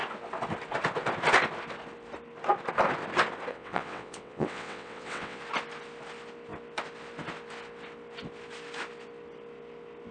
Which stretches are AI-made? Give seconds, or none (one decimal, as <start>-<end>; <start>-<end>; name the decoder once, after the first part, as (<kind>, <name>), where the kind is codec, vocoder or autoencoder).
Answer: 3.5-5.4 (vocoder, WaveNeXt)